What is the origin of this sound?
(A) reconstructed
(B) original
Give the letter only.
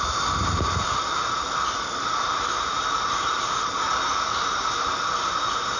A